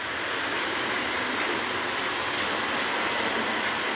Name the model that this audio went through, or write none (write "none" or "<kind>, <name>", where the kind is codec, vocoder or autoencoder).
none